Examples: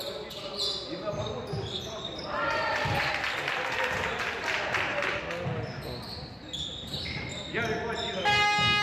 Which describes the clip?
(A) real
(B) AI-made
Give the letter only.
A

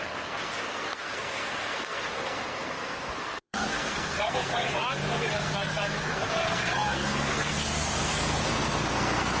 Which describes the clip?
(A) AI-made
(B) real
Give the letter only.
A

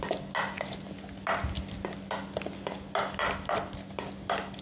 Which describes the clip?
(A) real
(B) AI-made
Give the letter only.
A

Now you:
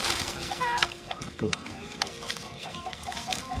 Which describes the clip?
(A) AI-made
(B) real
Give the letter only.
A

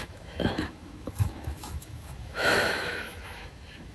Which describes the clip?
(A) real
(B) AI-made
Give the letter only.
B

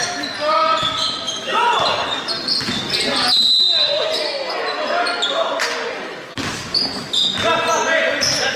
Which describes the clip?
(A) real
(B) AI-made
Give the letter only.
A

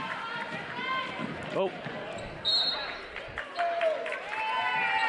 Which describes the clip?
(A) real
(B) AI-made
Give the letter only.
A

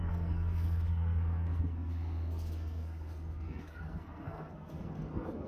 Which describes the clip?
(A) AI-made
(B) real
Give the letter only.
A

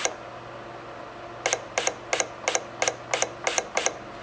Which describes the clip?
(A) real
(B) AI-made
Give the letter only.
A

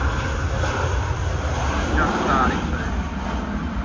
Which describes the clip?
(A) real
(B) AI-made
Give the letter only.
A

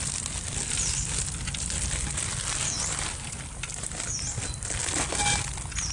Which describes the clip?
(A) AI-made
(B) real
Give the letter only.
B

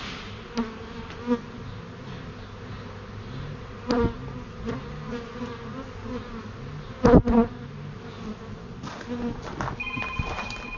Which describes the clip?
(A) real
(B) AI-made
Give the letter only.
A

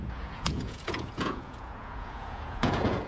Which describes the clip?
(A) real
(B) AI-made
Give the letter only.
B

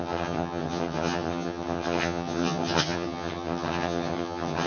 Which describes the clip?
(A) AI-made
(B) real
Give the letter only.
A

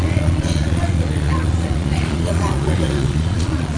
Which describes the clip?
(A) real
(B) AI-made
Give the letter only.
B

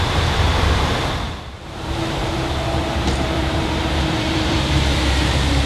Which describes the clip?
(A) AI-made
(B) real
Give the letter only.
A